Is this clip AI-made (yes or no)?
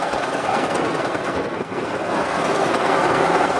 yes